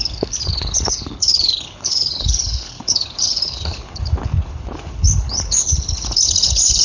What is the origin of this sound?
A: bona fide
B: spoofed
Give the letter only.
B